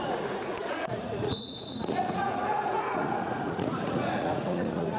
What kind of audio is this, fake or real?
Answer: fake